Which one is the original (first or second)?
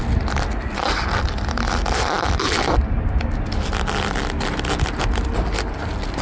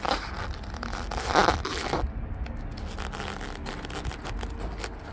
second